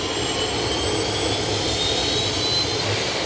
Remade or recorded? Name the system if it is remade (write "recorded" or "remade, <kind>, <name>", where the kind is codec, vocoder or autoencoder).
recorded